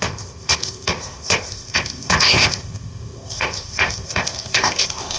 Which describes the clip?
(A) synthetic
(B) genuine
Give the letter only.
A